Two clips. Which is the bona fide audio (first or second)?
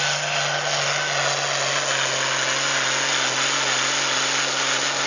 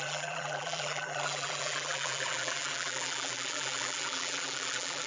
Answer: first